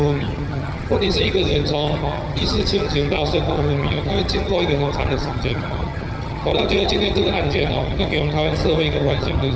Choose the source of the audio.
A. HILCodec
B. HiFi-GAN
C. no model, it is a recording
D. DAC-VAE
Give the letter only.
B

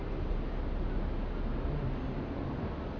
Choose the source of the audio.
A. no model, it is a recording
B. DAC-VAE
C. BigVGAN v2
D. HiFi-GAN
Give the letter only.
A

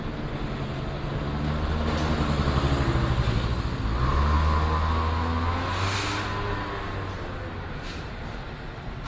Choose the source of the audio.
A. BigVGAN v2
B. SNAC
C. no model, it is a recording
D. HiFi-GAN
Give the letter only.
C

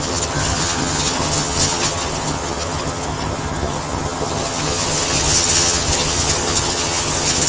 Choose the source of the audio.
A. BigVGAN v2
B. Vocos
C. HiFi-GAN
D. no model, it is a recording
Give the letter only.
C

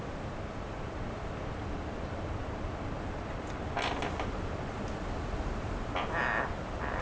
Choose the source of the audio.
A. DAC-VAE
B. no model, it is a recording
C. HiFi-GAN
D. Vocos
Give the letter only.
B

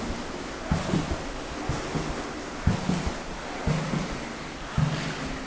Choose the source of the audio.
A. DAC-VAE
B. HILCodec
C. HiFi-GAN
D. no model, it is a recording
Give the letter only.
D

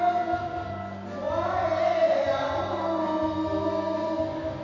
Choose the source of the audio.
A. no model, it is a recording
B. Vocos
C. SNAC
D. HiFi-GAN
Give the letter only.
A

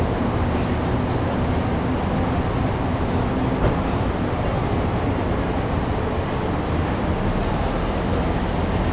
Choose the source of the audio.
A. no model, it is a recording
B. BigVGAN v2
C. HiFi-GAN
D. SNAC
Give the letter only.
A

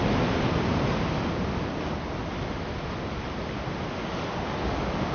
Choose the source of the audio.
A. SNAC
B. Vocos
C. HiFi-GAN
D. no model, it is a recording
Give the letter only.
D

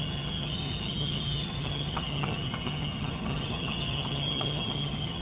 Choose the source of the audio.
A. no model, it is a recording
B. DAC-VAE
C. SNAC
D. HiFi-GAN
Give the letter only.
D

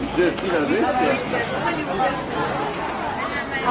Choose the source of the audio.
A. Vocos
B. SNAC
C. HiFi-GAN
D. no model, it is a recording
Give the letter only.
D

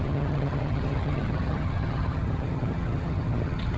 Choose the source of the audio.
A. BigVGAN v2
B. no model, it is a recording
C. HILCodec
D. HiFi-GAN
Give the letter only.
D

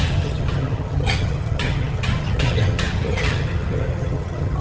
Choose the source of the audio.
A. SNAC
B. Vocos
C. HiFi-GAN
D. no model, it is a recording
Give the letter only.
C